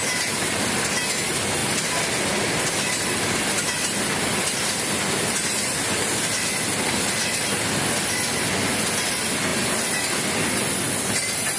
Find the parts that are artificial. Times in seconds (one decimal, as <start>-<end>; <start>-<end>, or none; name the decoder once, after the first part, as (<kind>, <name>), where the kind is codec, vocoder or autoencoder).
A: 1.6-6.8 (vocoder, BigVGAN v2); 9.5-10.3